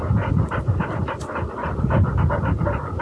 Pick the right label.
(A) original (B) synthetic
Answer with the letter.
A